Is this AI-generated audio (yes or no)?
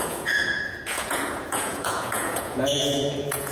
yes